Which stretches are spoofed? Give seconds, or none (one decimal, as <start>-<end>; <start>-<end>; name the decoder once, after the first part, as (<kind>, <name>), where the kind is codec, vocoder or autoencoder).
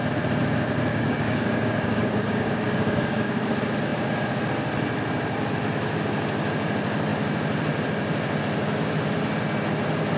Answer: 0.9-3.5 (codec, DAC)